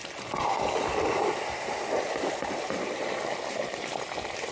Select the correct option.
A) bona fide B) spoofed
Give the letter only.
A